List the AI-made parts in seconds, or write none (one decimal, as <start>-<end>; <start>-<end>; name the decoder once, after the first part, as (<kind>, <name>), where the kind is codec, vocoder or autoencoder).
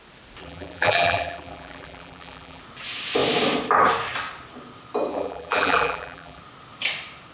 0.4-2.6 (vocoder, BigVGAN v2); 5.1-6.4